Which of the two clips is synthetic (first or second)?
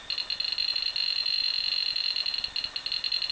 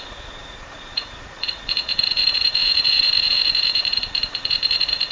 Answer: second